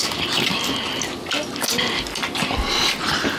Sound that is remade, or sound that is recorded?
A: recorded